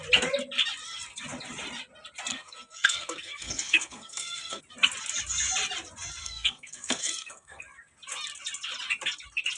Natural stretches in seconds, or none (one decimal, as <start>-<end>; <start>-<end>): 0.0-2.3; 4.6-6.2; 7.6-9.6